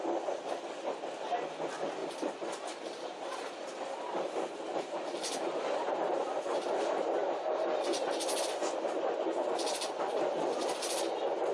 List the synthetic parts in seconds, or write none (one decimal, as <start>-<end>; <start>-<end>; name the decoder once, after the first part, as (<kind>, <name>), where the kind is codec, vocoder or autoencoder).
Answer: 2.0-5.6 (vocoder, BigVGAN v2)